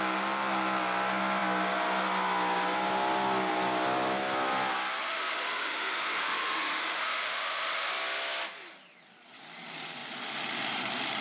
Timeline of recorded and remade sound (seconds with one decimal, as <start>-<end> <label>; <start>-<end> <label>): 0.0-5.0 recorded; 5.0-7.9 remade; 7.9-11.2 recorded